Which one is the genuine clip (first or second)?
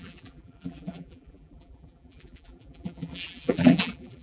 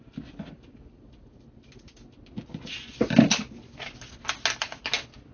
second